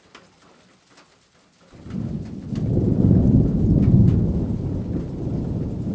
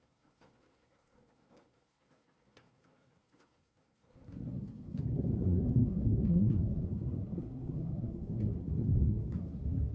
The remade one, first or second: second